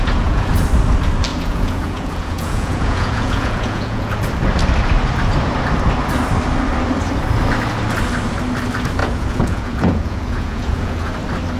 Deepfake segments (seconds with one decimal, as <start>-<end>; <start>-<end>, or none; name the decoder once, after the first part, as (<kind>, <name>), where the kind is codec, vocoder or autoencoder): 0.0-0.5 (vocoder, Vocos); 1.3-4.3; 9.0-11.1